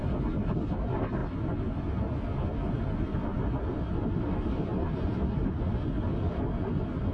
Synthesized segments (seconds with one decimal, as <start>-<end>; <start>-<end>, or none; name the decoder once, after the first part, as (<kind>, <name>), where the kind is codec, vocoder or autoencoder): none